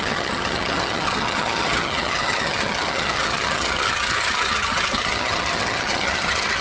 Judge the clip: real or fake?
fake